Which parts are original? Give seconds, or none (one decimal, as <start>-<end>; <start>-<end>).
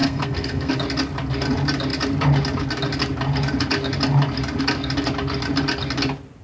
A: 0.7-6.4